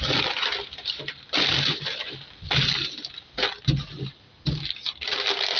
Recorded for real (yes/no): yes